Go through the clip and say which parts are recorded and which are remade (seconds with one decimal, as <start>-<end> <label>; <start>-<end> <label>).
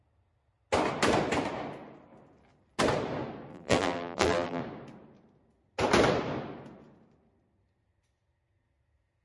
0.0-3.5 recorded; 3.5-4.6 remade; 4.6-9.2 recorded